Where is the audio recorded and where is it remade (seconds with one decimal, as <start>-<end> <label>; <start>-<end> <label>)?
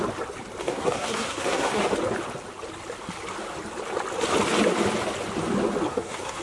0.0-0.6 recorded; 0.6-1.9 remade; 1.9-5.9 recorded; 5.9-6.4 remade